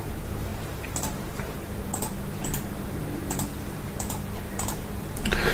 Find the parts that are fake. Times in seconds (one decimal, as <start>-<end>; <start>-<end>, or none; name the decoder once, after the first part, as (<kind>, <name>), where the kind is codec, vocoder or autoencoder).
0.0-1.8 (vocoder, BigVGAN v2); 2.4-5.5